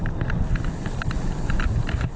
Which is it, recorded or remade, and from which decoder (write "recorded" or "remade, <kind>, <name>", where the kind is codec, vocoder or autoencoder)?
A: recorded